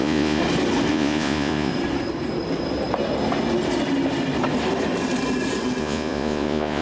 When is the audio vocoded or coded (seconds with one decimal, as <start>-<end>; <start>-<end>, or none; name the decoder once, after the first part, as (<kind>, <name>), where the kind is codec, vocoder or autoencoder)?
0.0-0.4 (vocoder, Vocos); 0.9-1.7; 5.8-6.8